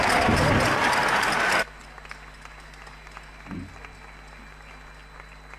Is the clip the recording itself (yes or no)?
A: yes